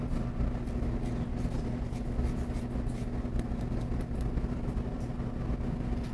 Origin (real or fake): real